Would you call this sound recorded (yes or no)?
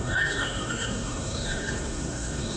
no